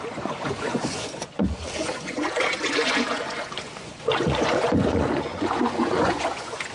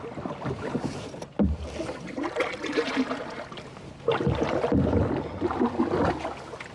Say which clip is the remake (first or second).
first